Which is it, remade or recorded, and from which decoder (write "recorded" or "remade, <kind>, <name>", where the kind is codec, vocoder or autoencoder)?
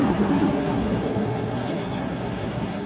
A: remade, codec, SNAC